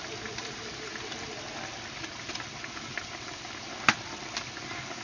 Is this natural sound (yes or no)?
yes